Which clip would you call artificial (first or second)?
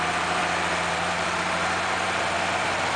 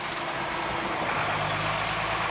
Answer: first